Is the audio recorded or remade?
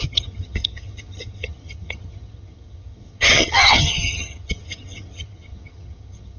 remade